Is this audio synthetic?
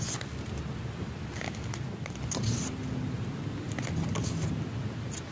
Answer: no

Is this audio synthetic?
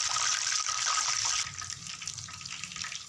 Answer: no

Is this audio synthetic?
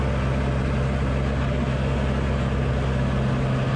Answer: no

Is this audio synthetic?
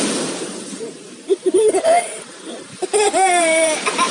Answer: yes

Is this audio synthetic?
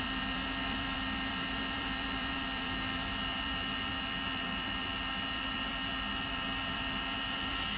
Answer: yes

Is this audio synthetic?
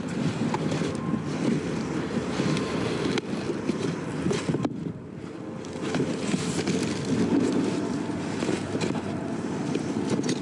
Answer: yes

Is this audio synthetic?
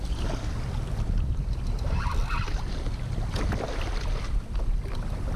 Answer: no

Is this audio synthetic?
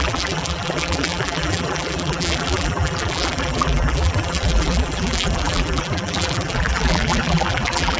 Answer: yes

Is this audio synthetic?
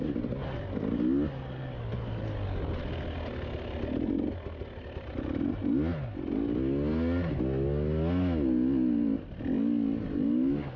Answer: no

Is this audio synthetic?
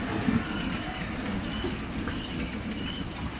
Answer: no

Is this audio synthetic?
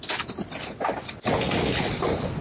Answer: no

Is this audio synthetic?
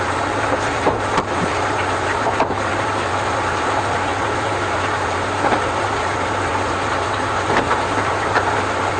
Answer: yes